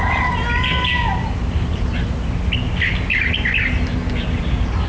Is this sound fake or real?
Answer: real